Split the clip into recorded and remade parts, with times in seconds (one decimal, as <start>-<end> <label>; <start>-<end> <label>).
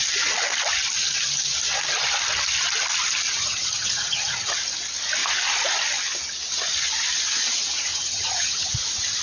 0.0-3.4 recorded; 3.4-4.5 remade; 4.5-7.9 recorded; 7.9-8.7 remade; 8.7-9.2 recorded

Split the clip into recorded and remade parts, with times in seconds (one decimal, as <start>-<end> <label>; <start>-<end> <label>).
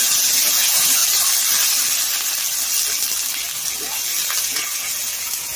0.0-1.0 remade; 1.0-4.4 recorded; 4.4-5.6 remade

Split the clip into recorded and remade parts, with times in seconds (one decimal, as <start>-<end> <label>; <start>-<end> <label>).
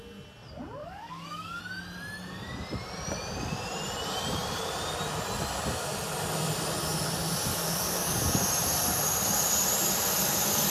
0.0-0.8 recorded; 0.8-1.6 remade; 1.6-7.5 recorded; 7.5-8.4 remade; 8.4-10.7 recorded